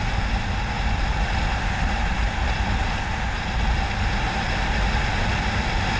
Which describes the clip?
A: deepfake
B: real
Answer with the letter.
B